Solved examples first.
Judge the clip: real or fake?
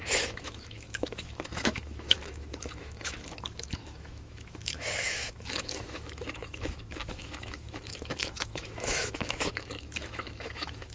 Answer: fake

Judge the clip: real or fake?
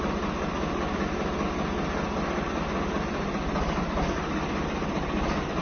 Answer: real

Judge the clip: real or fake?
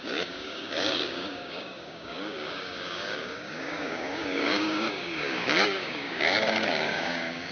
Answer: fake